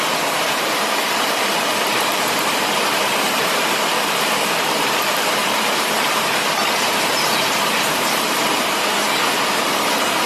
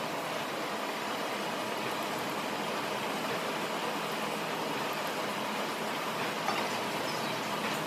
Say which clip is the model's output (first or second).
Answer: first